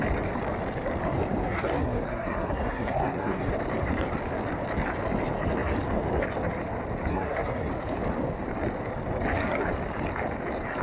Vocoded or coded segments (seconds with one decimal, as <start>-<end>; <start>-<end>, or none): 1.4-3.5; 7.1-7.7